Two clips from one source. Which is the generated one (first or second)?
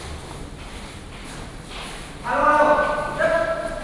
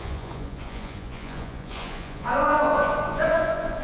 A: second